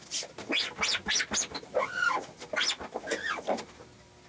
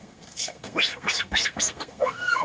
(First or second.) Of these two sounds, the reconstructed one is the second